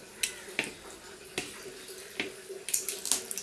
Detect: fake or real real